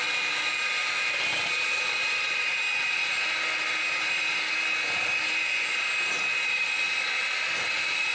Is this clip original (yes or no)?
yes